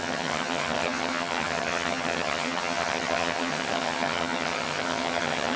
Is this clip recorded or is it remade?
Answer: remade